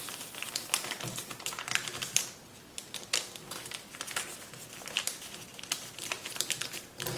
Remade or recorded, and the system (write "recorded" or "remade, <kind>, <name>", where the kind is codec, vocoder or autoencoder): recorded